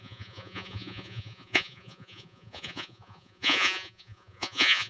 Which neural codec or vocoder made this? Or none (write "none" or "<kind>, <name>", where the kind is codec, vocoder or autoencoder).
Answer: vocoder, Vocos